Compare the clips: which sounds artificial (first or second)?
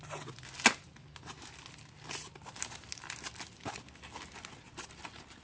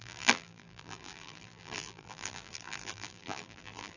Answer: second